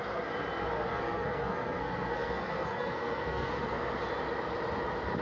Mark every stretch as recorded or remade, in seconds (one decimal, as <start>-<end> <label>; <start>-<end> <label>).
0.0-0.9 recorded; 0.9-4.0 remade; 4.0-5.2 recorded